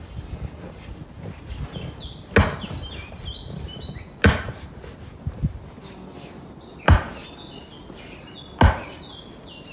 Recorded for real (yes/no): yes